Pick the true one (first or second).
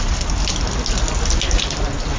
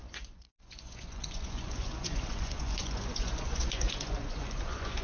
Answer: first